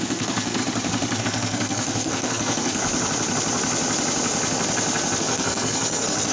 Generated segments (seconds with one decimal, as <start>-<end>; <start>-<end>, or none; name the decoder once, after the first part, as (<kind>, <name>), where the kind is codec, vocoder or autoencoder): 0.0-0.6 (codec, SNAC); 1.2-2.8; 5.2-6.3